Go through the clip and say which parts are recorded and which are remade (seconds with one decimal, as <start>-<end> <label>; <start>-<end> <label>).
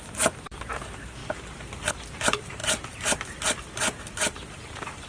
0.0-1.2 remade; 1.2-1.9 recorded; 1.9-5.1 remade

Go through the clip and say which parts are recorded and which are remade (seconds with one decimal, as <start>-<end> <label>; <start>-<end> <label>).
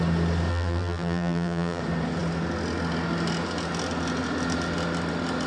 0.0-0.5 recorded; 0.5-1.8 remade; 1.8-5.5 recorded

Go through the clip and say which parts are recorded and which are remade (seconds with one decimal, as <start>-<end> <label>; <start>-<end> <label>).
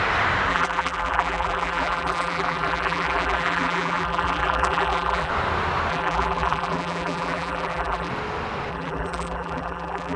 0.0-0.5 recorded; 0.5-5.3 remade; 5.3-5.9 recorded; 5.9-8.1 remade; 8.1-8.7 recorded; 8.7-10.2 remade